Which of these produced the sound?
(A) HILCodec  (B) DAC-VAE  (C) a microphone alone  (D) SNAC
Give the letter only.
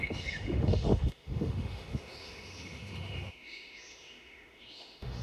B